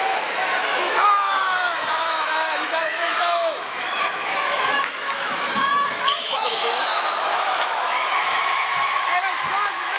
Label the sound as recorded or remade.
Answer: remade